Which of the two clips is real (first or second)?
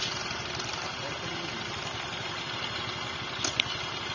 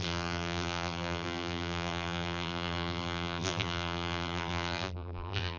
first